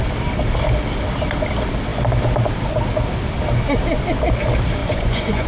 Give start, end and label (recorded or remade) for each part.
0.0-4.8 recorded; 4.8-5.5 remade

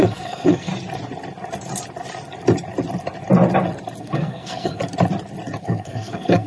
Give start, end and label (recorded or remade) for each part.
0.0-0.7 remade; 0.7-4.0 recorded; 4.0-4.8 remade; 4.8-5.6 recorded; 5.6-6.5 remade

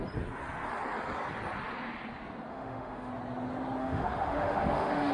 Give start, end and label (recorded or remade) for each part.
0.0-2.5 recorded; 2.5-3.1 remade; 3.1-3.8 recorded; 3.8-5.1 remade

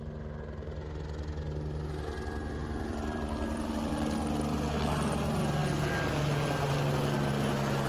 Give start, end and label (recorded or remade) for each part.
0.0-2.6 recorded; 2.6-3.9 remade; 3.9-7.9 recorded

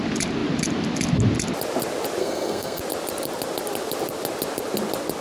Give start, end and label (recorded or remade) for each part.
0.0-2.2 recorded; 2.2-2.8 remade; 2.8-5.2 recorded

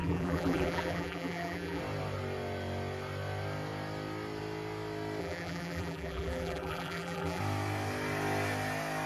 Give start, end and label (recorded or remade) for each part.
0.0-1.8 remade; 1.8-5.2 recorded; 5.2-7.4 remade; 7.4-9.1 recorded

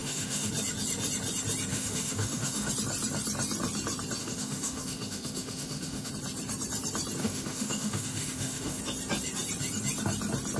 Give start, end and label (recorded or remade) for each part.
0.0-0.5 remade; 0.5-1.7 recorded; 1.7-2.7 remade; 2.7-4.2 recorded; 4.2-6.1 remade; 6.1-7.2 recorded; 7.2-8.8 remade; 8.8-10.6 recorded